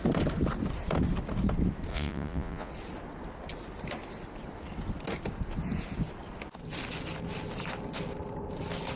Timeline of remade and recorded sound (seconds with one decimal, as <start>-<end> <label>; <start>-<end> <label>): 0.0-1.9 recorded; 1.9-2.7 remade; 2.7-9.0 recorded